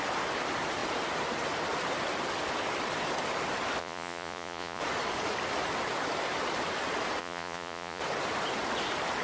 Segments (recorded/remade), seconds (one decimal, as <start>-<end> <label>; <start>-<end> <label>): 0.0-3.8 recorded; 3.8-4.8 remade; 4.8-7.2 recorded; 7.2-8.0 remade; 8.0-9.2 recorded